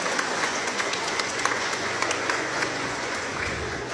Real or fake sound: fake